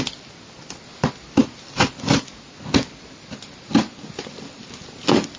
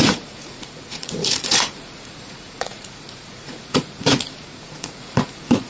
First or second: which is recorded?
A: first